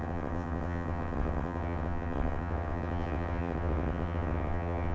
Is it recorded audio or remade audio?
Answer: remade